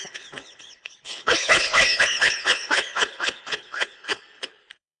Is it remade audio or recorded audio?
remade